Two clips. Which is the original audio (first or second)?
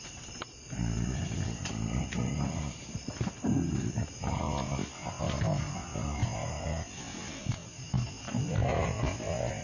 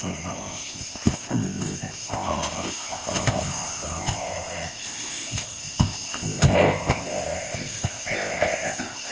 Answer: first